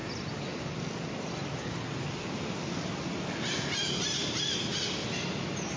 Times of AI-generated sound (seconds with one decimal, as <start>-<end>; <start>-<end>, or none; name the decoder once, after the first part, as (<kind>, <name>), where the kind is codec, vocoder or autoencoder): none

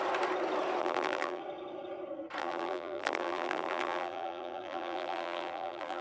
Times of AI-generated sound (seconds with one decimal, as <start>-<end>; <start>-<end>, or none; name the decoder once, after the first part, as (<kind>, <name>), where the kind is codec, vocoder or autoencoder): 0.8-1.4 (vocoder, BigVGAN v2); 2.4-6.0

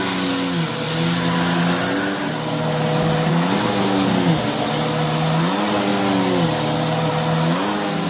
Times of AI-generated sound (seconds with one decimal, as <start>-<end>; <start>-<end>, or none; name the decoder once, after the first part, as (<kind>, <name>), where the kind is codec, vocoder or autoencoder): 3.3-4.4 (codec, SNAC)

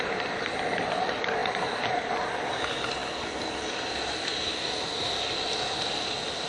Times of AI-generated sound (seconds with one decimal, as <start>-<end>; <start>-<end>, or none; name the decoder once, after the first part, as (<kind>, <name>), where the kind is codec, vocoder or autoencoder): none

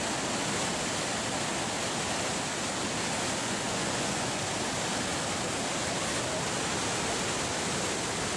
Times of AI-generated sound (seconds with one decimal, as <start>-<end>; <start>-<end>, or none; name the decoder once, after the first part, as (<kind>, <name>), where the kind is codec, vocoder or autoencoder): 3.4-4.4 (vocoder, Vocos)

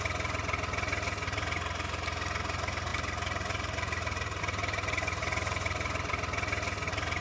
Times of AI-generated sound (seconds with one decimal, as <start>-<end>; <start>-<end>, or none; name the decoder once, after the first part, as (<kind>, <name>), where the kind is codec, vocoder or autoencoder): 2.9-4.4 (vocoder, BigVGAN v2); 5.2-6.1